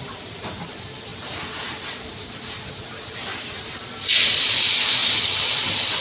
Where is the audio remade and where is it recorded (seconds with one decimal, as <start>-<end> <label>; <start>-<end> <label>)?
0.0-5.0 remade; 5.0-6.0 recorded